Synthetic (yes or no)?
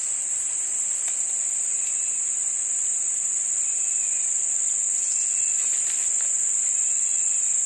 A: no